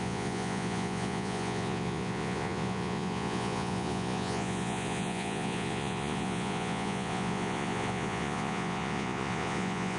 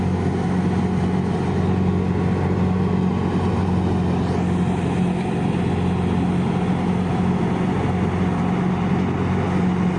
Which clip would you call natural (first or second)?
second